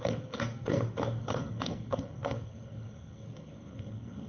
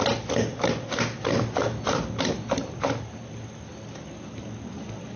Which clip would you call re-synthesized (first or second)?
first